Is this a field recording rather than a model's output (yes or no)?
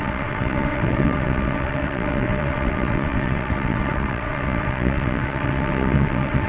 no